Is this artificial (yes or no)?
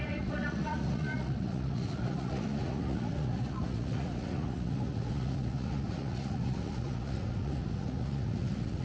yes